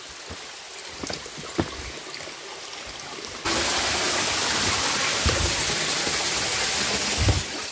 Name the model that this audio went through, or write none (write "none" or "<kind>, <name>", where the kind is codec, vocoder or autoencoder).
none